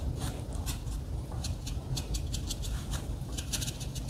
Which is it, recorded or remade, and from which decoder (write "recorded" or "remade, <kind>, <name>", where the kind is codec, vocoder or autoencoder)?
remade, vocoder, BigVGAN v2